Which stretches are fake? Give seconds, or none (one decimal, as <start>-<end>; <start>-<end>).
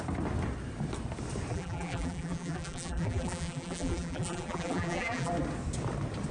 1.5-5.3